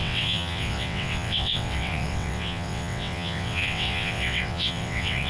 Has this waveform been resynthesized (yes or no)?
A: yes